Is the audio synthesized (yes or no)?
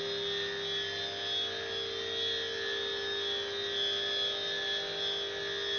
no